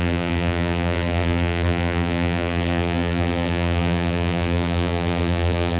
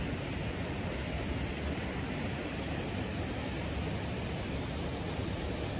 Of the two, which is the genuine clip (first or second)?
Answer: second